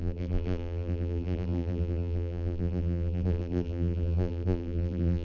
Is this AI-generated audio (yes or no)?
yes